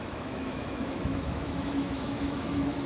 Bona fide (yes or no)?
no